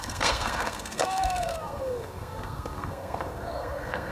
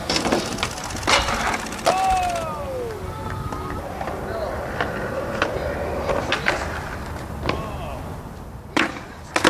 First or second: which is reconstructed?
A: first